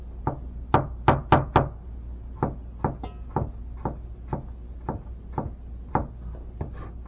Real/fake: real